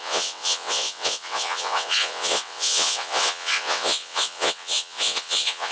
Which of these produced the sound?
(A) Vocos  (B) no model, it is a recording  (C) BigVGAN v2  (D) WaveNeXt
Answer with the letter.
D